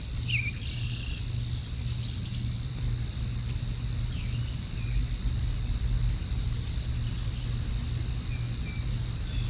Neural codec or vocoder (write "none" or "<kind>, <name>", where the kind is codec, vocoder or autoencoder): none